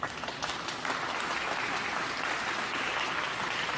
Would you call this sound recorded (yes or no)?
yes